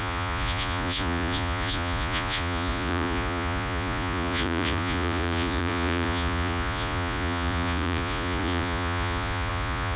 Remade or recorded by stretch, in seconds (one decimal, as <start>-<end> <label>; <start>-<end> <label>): 0.0-10.0 remade

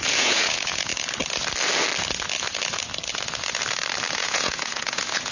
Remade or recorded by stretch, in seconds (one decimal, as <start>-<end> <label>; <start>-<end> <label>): 0.0-0.9 remade; 0.9-4.1 recorded; 4.1-5.3 remade

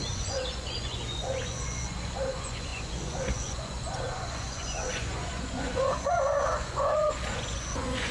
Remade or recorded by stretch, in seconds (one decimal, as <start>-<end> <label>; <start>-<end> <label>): 0.0-8.1 remade

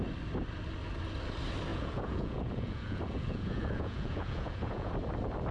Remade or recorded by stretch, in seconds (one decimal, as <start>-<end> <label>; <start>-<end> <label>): 0.0-1.7 recorded; 1.7-4.9 remade; 4.9-5.5 recorded

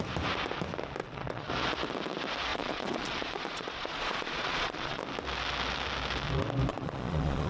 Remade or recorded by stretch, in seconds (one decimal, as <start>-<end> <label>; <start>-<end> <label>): 0.0-1.0 recorded; 1.0-1.5 remade; 1.5-2.5 recorded; 2.5-5.0 remade; 5.0-6.7 recorded; 6.7-7.5 remade

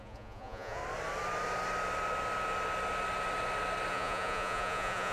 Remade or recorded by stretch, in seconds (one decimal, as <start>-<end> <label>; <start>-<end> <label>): 0.0-0.8 remade; 0.8-3.9 recorded; 3.9-5.1 remade

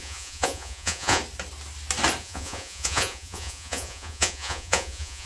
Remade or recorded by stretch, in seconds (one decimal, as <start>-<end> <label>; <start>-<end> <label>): 0.0-1.2 remade; 1.2-2.2 recorded; 2.2-5.3 remade